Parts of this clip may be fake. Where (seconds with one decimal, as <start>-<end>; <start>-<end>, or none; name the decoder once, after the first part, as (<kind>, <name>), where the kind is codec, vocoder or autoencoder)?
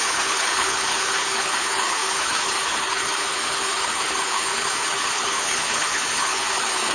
0.0-6.9 (codec, HILCodec)